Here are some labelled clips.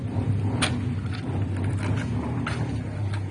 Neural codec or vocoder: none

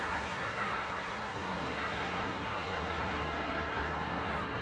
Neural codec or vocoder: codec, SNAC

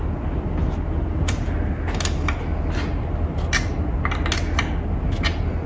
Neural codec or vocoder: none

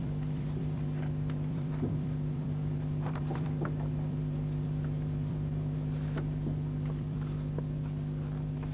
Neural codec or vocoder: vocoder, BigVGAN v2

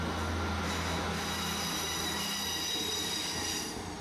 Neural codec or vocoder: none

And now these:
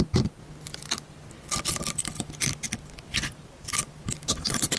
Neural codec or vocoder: none